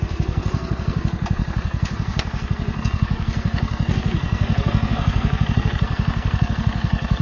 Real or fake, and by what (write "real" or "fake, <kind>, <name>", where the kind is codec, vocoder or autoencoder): fake, codec, SNAC